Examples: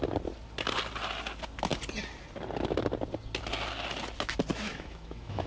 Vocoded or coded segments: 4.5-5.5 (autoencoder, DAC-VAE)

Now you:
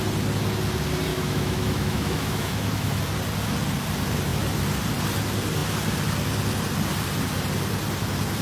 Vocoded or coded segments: 1.1-3.0 (autoencoder, DAC-VAE)